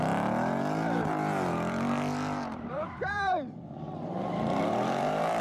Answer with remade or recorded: remade